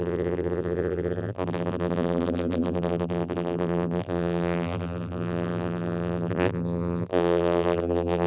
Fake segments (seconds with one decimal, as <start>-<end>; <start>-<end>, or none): 0.0-8.3